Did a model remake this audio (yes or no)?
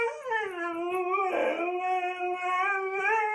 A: no